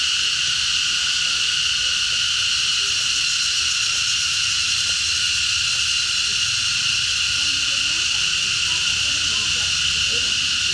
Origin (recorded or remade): recorded